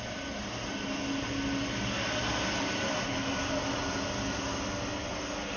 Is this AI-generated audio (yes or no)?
no